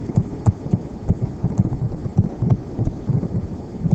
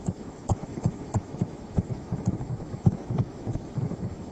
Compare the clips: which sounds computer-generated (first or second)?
second